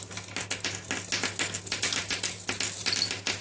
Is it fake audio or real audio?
real